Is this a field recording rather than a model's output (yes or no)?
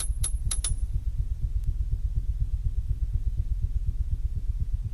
no